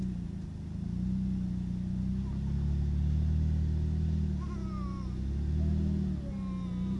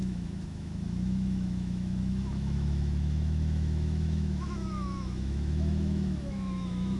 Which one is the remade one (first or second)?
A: second